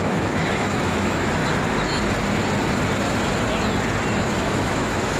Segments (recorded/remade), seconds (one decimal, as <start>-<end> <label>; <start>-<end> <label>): 0.0-1.4 remade; 1.4-4.2 recorded; 4.2-5.2 remade